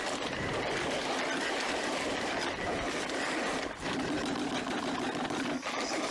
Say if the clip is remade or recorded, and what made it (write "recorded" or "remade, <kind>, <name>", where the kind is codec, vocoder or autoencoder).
recorded